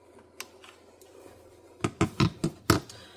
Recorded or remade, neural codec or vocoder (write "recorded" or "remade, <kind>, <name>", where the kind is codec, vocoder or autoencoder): recorded